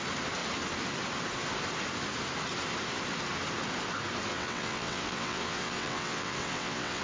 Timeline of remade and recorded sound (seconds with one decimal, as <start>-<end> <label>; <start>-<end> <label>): 0.0-4.3 recorded; 4.3-7.0 remade